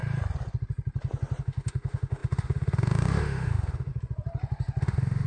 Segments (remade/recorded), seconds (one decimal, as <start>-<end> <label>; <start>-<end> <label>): 0.0-1.4 recorded; 1.4-3.9 remade; 3.9-4.8 recorded; 4.8-5.3 remade